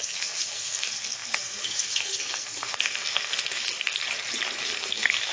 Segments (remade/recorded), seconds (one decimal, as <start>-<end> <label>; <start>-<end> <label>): 0.0-4.0 remade; 4.0-4.6 recorded; 4.6-5.3 remade